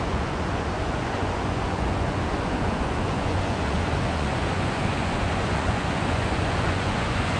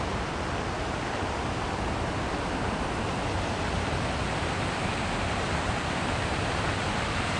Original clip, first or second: second